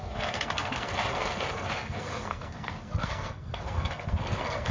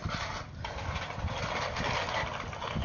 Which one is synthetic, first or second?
first